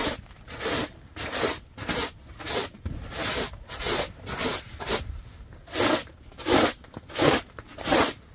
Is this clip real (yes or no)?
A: yes